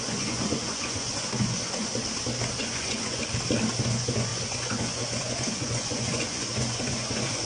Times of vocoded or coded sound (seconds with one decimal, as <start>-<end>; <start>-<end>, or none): 0.0-1.9; 2.6-3.2; 3.8-7.5